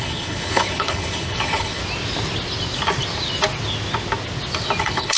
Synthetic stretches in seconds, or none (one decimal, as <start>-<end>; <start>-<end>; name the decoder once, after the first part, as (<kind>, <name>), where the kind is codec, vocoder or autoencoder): 0.0-1.8 (codec, HILCodec); 4.8-5.2